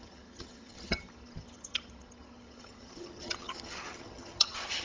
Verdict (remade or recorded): remade